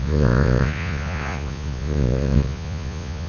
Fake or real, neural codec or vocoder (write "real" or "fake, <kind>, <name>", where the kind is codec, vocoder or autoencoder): fake, vocoder, Vocos